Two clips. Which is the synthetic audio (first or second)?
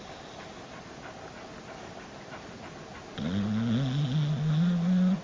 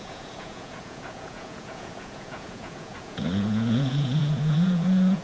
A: second